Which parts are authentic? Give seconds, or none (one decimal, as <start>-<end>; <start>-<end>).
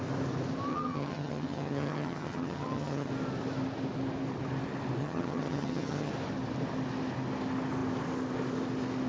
0.0-0.7; 3.1-5.0; 6.1-9.1